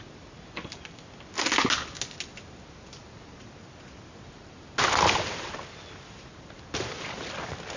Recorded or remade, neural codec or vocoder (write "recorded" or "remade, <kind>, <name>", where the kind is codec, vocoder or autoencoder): recorded